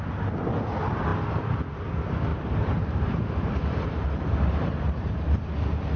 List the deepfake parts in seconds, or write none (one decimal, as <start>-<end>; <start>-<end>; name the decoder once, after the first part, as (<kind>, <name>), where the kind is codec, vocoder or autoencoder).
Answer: 2.3-6.0 (vocoder, BigVGAN v2)